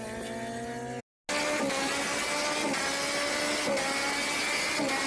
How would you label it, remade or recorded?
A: recorded